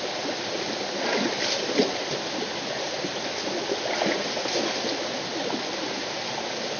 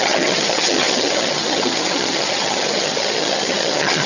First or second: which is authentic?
first